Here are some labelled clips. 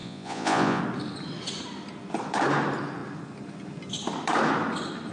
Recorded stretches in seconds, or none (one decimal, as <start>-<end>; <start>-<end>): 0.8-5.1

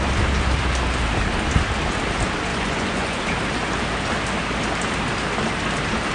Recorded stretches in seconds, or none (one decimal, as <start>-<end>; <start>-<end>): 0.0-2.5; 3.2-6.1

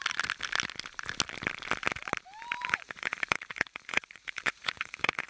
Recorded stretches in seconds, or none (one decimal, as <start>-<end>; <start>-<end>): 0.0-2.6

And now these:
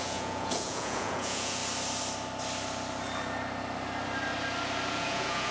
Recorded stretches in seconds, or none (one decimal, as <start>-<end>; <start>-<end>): 1.6-4.9

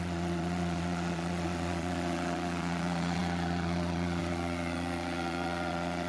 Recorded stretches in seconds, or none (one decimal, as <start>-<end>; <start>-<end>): none

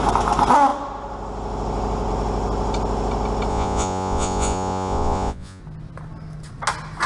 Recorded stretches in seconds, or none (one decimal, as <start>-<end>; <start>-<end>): 0.0-3.5; 5.6-7.1